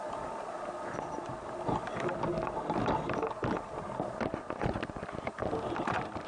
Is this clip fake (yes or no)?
no